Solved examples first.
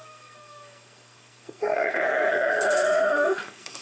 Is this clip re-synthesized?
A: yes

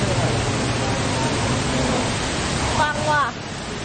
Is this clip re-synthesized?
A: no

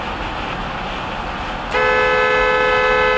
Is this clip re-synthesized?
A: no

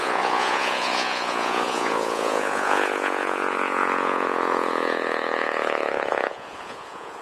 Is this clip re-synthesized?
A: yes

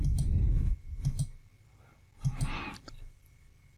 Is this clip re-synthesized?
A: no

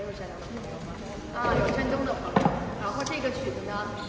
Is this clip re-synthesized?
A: no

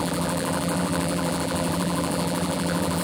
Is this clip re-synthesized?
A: yes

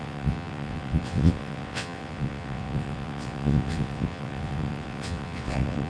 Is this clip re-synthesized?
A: yes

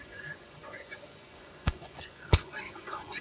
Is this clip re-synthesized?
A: yes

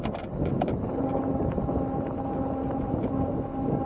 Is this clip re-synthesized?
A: no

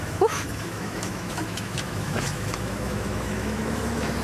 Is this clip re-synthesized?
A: yes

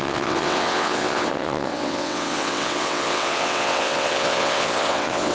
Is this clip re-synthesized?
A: yes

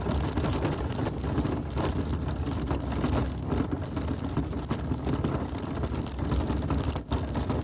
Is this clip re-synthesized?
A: no